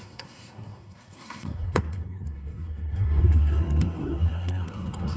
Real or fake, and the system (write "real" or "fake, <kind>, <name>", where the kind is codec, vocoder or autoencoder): fake, codec, SNAC